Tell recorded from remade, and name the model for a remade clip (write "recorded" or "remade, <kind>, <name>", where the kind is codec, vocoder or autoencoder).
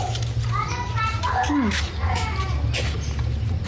recorded